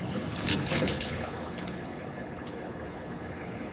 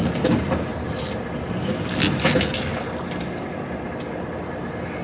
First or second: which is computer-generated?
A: first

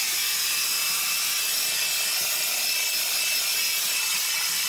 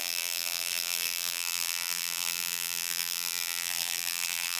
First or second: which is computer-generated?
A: second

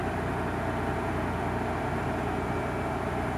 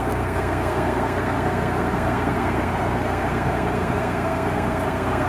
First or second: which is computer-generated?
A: second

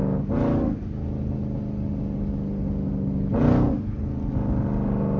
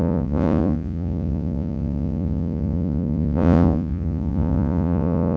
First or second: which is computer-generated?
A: second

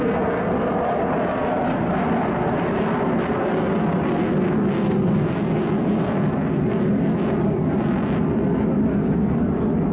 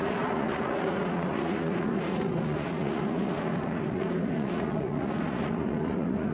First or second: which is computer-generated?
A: second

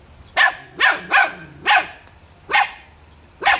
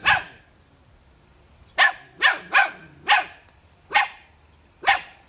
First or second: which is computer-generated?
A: second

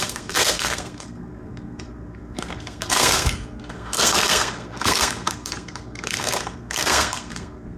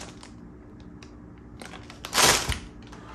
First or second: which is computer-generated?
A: first